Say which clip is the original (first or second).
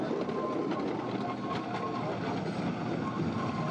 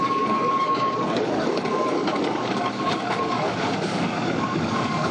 first